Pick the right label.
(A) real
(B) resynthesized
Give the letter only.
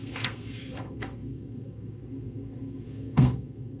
B